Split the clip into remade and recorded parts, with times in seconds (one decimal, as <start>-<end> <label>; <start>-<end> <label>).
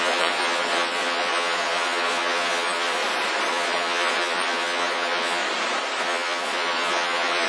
0.0-3.0 remade; 3.0-3.5 recorded; 3.5-5.4 remade; 5.4-6.0 recorded; 6.0-7.5 remade